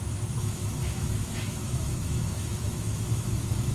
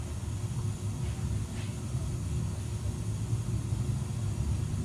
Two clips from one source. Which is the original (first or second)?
second